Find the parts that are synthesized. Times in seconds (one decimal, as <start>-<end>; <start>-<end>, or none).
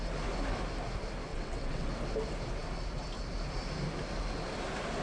1.3-1.9